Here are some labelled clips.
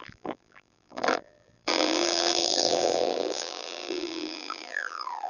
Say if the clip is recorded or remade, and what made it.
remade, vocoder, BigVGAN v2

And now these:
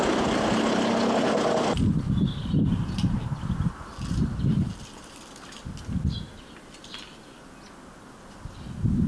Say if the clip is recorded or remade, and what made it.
recorded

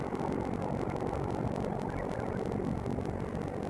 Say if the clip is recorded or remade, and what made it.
recorded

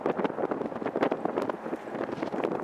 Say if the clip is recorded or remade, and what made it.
recorded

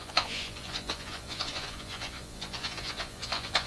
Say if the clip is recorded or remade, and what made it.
remade, vocoder, Vocos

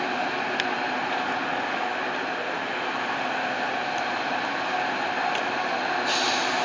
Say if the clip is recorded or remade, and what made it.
recorded